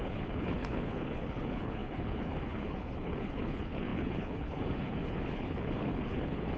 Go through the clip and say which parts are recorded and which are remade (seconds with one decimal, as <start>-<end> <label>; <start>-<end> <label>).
0.0-6.6 remade